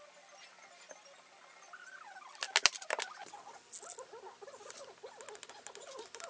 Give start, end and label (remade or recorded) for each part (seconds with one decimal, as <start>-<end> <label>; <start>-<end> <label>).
0.0-6.3 recorded